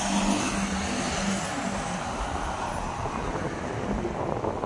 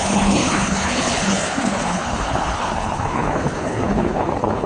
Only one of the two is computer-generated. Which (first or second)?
second